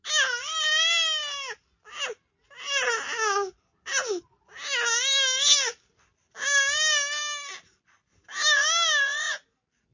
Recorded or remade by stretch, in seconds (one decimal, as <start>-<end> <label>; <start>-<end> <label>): 0.0-9.9 recorded